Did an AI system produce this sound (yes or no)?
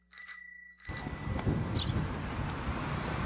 no